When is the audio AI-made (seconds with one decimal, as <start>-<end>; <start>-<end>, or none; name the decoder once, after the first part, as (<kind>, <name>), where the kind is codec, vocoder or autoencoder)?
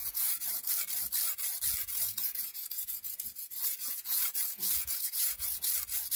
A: 0.0-0.7 (vocoder, Vocos); 1.8-5.5